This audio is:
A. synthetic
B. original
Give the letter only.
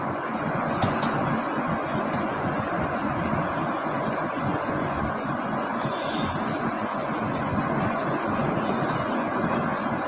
A